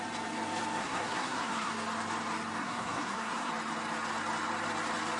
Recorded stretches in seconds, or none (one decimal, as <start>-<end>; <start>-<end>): 0.0-0.8; 1.7-2.6; 3.5-5.2